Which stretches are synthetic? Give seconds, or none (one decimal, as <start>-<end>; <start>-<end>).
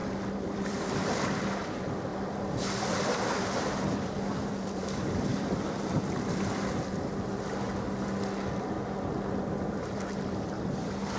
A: 0.0-1.4; 2.1-7.2